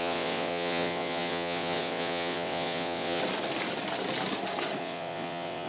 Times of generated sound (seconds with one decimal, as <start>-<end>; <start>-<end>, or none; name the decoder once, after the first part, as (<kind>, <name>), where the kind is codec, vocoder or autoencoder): 0.0-3.2 (vocoder, WaveNeXt); 4.8-5.7